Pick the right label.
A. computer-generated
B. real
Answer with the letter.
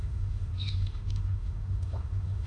A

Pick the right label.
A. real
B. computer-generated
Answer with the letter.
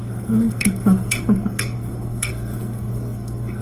B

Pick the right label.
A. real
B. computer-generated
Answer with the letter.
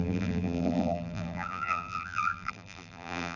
B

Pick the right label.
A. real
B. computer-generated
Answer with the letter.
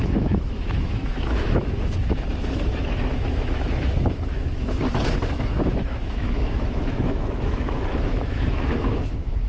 B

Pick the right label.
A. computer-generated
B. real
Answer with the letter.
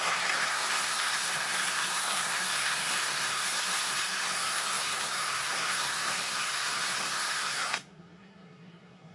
A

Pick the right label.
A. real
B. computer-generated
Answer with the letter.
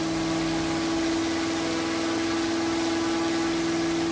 A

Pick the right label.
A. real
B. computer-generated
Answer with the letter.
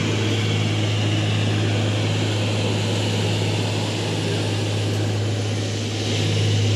A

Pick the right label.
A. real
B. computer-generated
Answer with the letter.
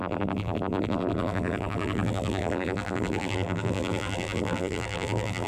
B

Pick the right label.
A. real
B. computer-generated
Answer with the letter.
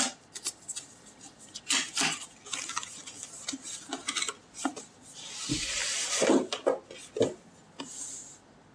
A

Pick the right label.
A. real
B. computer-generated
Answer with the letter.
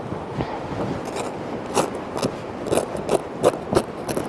A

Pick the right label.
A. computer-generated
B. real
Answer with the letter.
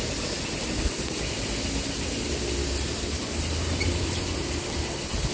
B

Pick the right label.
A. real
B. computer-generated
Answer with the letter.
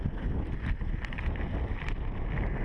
A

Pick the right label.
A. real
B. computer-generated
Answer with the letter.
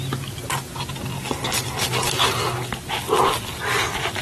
A